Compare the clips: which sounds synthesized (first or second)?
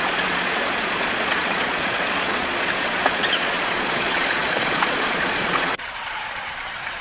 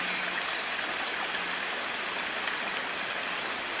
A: first